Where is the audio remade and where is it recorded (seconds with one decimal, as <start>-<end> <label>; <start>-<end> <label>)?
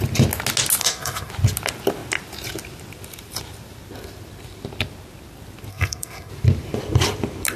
0.0-0.8 recorded; 0.8-1.3 remade; 1.3-5.7 recorded; 5.7-6.3 remade; 6.3-7.6 recorded